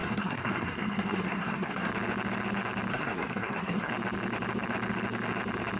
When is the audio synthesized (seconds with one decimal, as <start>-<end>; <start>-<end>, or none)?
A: 0.0-1.9; 2.9-3.9